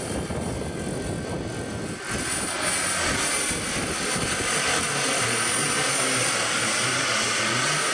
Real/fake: real